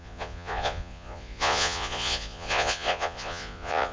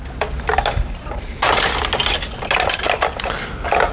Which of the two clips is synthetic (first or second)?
first